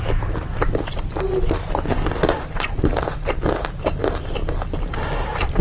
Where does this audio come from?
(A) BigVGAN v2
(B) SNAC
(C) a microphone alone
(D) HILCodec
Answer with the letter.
C